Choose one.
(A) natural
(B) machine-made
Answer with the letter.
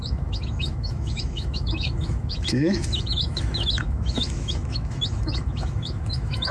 B